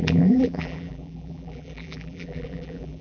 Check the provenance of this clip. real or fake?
fake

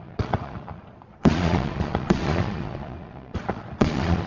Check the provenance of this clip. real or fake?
fake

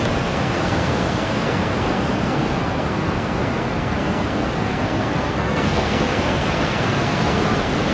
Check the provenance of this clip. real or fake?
fake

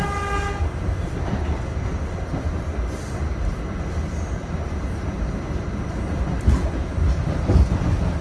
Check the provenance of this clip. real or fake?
real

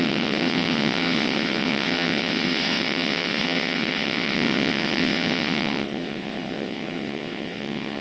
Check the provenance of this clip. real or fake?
fake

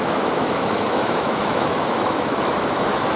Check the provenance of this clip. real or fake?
fake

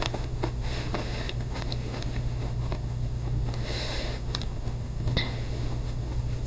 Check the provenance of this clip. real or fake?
fake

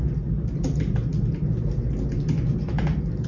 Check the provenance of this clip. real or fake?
real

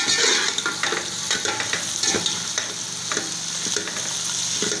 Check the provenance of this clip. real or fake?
real